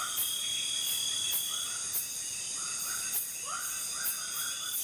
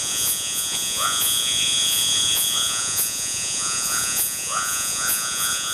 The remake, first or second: second